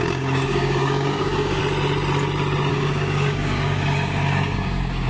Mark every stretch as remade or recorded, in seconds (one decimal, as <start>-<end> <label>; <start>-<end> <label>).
0.0-1.6 remade; 1.6-2.7 recorded; 2.7-5.1 remade